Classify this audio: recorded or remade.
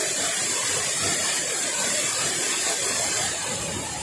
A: remade